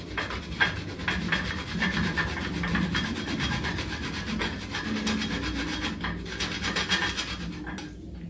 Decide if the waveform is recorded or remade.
recorded